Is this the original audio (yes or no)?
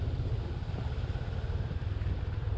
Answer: yes